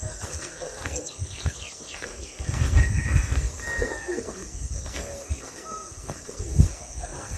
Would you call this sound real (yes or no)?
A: no